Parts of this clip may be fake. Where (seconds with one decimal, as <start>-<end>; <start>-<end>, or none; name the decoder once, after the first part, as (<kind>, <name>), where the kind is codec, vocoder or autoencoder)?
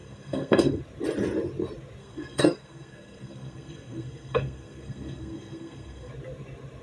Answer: 0.0-0.8 (codec, SNAC); 2.0-6.1